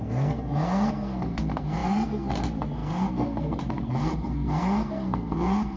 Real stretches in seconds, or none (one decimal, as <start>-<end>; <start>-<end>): none